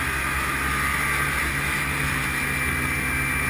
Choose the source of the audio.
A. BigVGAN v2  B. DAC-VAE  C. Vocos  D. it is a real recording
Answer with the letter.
D